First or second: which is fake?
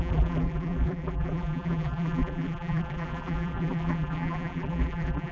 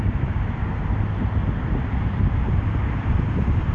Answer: first